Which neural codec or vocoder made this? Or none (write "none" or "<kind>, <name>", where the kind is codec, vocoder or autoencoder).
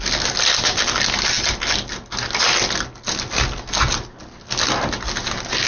none